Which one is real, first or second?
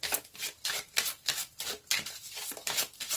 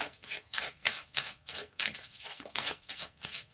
first